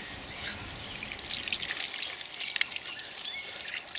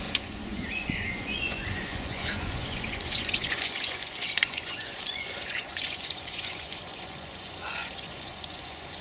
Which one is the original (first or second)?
first